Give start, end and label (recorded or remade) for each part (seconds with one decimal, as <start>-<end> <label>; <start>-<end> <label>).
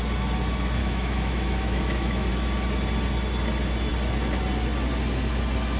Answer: 0.0-0.8 recorded; 0.8-2.3 remade; 2.3-5.8 recorded